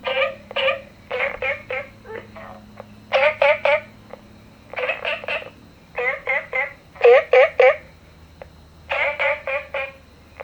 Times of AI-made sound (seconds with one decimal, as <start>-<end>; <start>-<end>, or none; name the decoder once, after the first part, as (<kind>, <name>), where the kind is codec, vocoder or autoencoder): 0.0-1.9 (vocoder, BigVGAN v2)